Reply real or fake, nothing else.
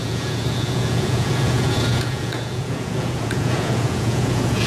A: fake